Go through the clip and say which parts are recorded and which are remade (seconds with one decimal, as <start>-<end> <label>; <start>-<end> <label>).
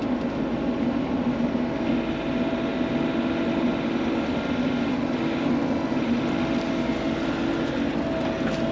0.0-8.7 recorded